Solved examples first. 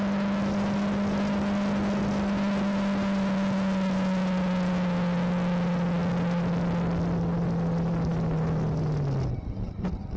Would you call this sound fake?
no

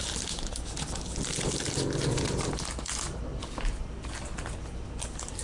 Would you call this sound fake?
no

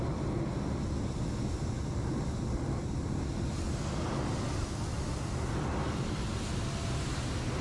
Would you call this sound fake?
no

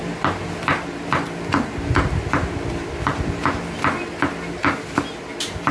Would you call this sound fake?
no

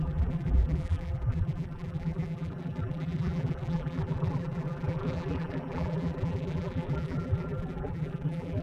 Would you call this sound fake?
yes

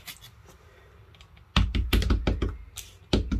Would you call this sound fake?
no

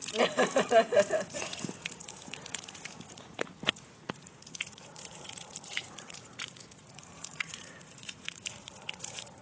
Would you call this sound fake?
yes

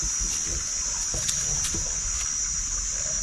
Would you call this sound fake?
no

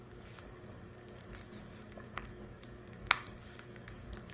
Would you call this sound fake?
yes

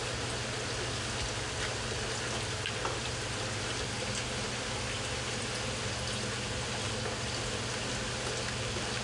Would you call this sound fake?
no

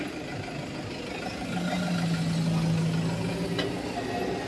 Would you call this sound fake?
no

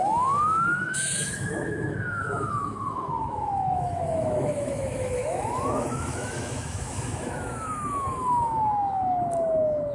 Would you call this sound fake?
yes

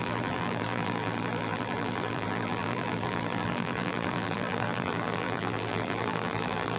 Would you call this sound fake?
yes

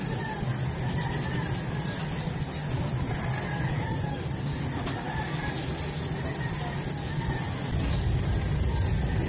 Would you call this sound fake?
no